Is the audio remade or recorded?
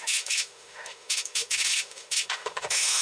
remade